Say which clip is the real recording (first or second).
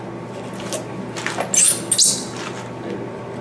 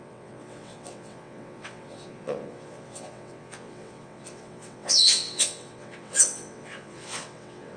first